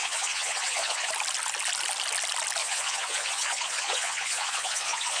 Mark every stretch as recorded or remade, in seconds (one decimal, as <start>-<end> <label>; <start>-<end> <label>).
0.0-1.1 remade; 1.1-2.6 recorded; 2.6-5.2 remade